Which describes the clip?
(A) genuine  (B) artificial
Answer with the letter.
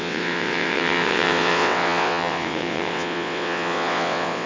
B